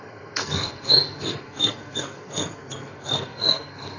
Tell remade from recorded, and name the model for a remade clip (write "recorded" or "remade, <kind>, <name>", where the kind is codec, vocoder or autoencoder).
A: remade, codec, SNAC